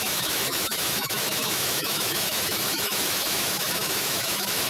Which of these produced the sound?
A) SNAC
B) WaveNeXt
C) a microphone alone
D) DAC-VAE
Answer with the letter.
D